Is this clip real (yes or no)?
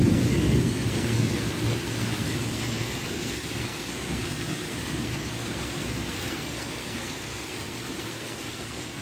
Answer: no